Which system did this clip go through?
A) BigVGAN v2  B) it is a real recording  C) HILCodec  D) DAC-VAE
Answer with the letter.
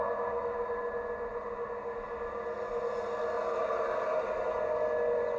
B